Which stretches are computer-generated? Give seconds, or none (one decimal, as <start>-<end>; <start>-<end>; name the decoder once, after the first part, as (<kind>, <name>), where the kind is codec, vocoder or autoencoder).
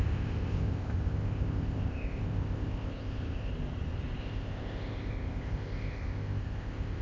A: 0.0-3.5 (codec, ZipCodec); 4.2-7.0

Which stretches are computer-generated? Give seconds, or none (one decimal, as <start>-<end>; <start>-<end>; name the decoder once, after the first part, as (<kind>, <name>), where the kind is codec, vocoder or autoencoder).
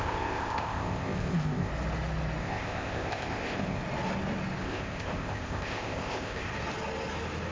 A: 0.0-1.7 (codec, ZipCodec); 2.4-3.8; 4.6-6.5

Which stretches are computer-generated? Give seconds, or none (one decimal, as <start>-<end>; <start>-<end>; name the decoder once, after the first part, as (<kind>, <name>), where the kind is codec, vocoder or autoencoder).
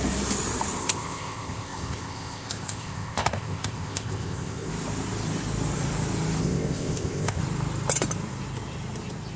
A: 0.8-4.7 (codec, ZipCodec); 6.4-7.4